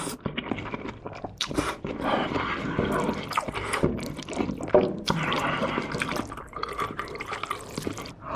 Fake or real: fake